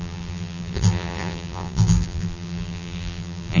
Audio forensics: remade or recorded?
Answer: remade